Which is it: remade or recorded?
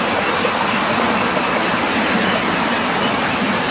recorded